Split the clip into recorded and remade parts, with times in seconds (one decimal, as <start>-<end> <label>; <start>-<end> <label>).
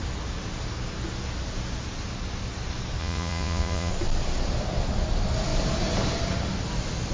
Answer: 0.0-3.0 recorded; 3.0-3.9 remade; 3.9-7.1 recorded